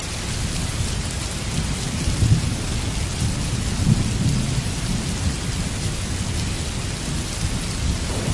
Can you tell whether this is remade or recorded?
recorded